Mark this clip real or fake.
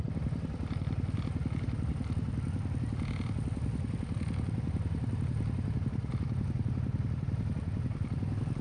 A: real